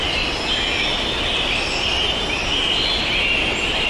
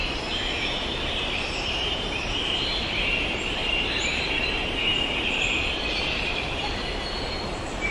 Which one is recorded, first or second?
first